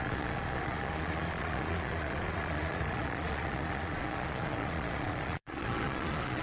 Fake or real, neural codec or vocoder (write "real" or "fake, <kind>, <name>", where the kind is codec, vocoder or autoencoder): fake, vocoder, Vocos